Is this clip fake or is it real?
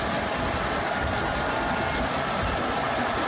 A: real